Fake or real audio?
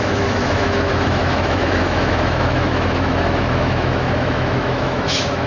fake